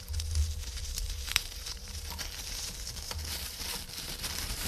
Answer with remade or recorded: remade